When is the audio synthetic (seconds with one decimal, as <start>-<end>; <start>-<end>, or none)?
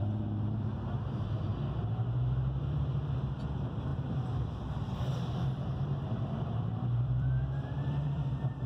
0.0-1.5; 2.6-8.7